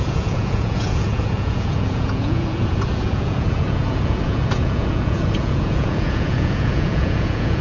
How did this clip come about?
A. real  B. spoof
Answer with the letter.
B